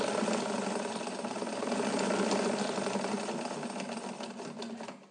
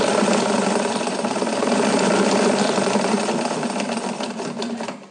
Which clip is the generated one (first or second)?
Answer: second